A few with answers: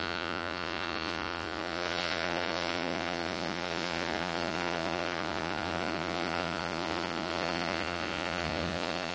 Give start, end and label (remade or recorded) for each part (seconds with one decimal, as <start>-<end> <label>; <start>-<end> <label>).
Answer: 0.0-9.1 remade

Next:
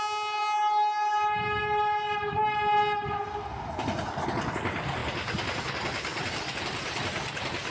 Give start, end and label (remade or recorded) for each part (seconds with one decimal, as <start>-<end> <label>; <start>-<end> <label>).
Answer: 0.0-7.7 recorded

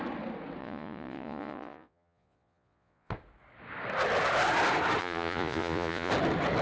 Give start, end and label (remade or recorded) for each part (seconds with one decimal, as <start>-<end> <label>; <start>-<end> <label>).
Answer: 0.0-0.6 recorded; 0.6-3.1 remade; 3.1-5.0 recorded; 5.0-6.1 remade; 6.1-6.6 recorded